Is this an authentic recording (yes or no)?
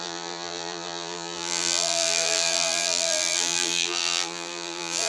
no